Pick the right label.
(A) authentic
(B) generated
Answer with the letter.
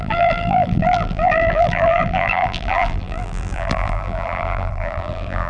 B